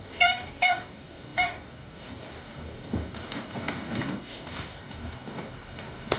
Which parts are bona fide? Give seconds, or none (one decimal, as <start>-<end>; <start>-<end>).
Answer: none